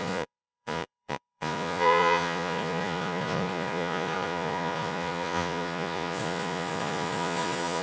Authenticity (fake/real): fake